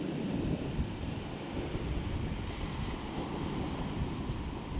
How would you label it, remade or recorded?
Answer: recorded